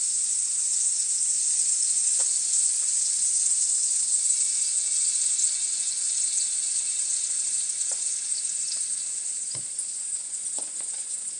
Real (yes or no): no